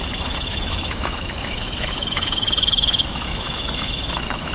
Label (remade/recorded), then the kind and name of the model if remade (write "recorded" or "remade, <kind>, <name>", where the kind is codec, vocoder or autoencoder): remade, autoencoder, DAC-VAE